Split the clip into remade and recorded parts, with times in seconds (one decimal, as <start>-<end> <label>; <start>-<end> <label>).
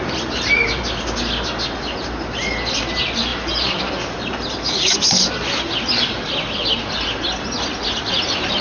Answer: 0.0-8.6 recorded